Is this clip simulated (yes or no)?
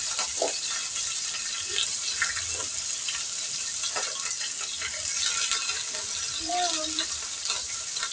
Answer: no